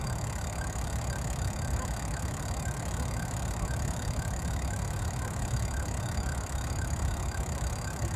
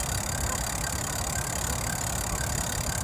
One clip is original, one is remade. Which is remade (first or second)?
first